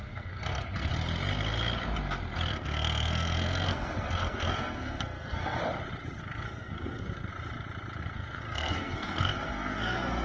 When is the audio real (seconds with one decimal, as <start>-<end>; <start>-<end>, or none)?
0.9-2.5; 5.6-6.2; 7.3-8.0